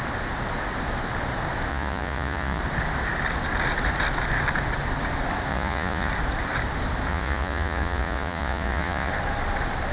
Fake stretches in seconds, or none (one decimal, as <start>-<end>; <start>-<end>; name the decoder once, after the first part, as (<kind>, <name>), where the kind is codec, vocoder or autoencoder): 1.7-2.6 (vocoder, Vocos); 5.5-6.1; 7.1-9.1